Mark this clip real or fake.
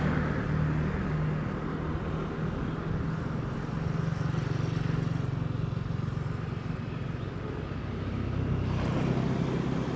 real